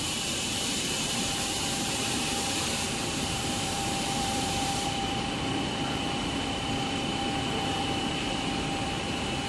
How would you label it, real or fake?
fake